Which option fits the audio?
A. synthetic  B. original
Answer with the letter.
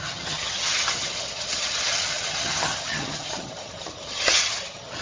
A